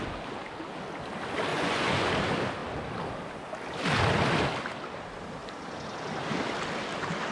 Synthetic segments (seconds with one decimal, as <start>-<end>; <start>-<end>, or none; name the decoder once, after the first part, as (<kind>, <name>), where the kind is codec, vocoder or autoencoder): 1.5-2.1 (vocoder, Vocos)